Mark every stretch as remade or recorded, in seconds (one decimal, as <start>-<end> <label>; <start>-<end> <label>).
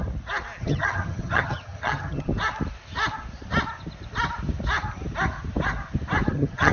0.0-0.6 recorded; 0.6-2.3 remade; 2.3-6.3 recorded; 6.3-6.7 remade